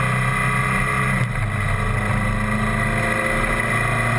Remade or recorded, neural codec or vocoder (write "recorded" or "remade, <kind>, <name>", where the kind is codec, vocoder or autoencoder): recorded